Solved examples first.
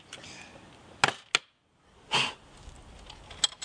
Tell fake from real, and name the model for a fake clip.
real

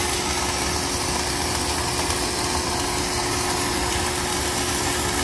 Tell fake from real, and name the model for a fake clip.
real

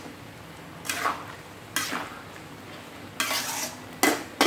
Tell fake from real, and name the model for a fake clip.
real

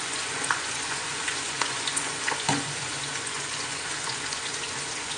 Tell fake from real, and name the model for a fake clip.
fake, vocoder, Vocos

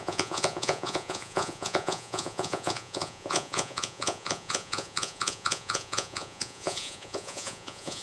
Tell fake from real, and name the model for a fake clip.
fake, vocoder, Vocos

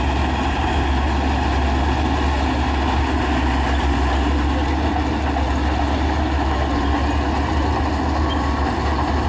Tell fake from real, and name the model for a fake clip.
real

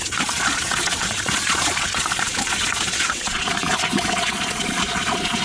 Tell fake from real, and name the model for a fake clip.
fake, vocoder, Vocos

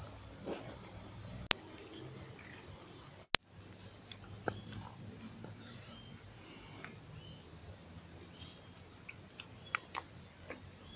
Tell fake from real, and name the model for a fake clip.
real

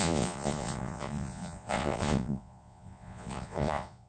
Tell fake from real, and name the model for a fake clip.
fake, vocoder, Vocos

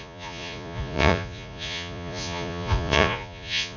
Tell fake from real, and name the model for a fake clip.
fake, vocoder, Vocos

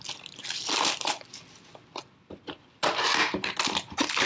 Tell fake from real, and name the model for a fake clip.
real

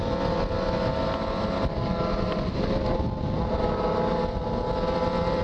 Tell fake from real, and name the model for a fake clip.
real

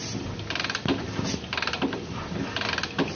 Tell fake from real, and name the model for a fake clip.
real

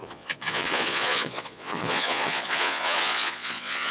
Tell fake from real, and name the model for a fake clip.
fake, vocoder, Vocos